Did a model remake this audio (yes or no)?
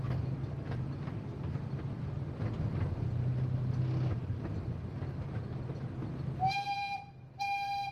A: no